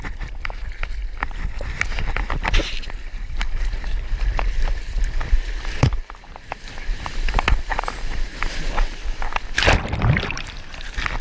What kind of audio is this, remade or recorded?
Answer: remade